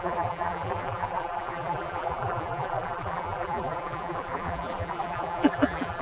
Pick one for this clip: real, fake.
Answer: fake